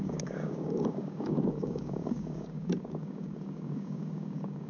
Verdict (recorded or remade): remade